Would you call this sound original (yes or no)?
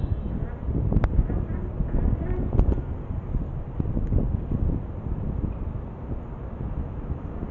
yes